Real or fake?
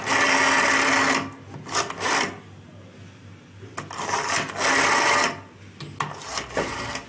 real